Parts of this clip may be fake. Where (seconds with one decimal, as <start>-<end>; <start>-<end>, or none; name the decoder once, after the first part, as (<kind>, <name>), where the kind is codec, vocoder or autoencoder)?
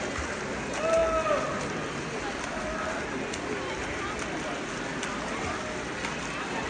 none